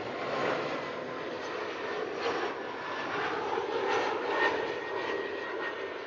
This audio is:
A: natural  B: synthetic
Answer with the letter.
A